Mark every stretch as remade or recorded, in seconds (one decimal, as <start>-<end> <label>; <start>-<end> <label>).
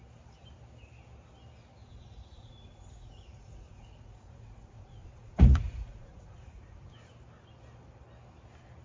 0.0-1.8 recorded; 1.8-6.9 remade; 6.9-8.8 recorded